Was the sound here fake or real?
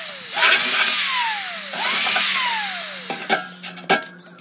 real